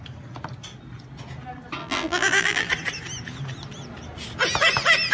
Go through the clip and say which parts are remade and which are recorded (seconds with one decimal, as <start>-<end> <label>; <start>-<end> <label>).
0.0-1.8 recorded; 1.8-2.7 remade; 2.7-5.1 recorded